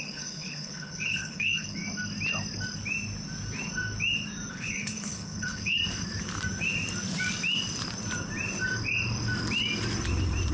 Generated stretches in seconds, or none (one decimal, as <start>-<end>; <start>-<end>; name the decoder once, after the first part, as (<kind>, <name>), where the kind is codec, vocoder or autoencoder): 0.0-1.8 (codec, HILCodec); 4.5-5.8

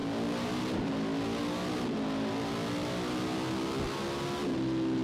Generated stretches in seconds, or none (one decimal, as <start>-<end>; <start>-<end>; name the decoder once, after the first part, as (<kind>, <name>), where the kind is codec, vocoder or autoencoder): none